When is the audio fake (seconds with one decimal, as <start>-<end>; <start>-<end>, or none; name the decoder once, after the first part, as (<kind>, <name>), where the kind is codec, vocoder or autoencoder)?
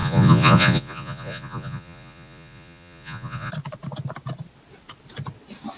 0.0-3.5 (vocoder, Vocos)